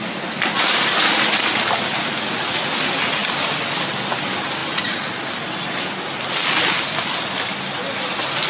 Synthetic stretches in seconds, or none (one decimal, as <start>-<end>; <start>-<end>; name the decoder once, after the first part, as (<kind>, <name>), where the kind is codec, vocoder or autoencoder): none